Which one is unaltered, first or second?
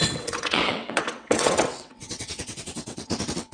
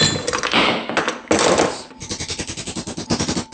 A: second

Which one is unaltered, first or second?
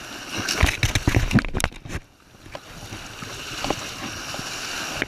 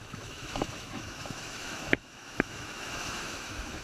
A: first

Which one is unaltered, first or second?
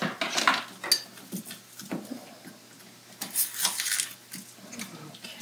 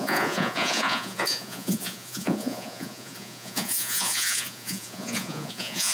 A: first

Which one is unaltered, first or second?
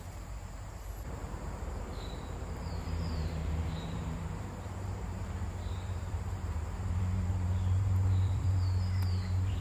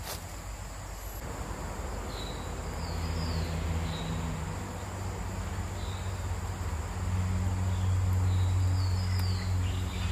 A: second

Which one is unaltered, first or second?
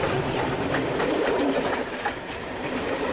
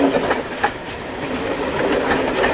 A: second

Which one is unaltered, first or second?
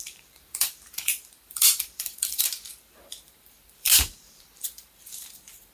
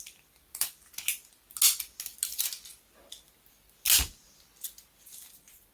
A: second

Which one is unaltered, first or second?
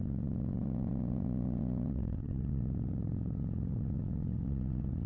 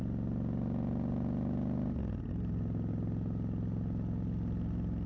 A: second